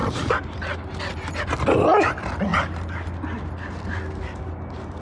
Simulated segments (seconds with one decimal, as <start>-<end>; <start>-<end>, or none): none